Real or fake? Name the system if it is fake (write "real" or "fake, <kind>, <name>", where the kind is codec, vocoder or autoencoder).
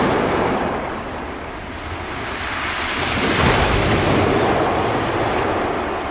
real